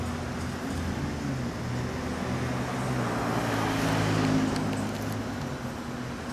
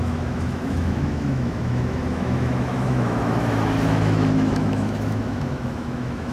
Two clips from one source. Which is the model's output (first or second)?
second